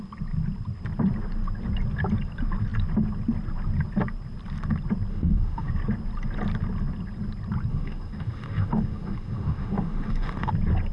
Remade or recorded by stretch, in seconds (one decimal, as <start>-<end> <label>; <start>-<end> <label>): 0.0-5.1 recorded; 5.1-5.7 remade; 5.7-7.7 recorded; 7.7-10.5 remade; 10.5-10.9 recorded